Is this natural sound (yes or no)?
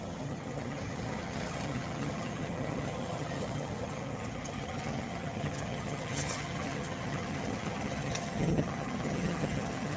no